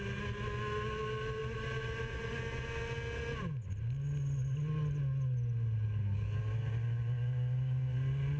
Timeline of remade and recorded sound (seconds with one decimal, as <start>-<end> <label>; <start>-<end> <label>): 0.0-8.4 recorded